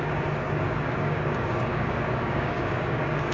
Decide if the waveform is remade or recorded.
remade